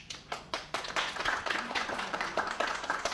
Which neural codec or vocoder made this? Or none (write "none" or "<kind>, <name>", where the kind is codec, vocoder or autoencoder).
vocoder, Vocos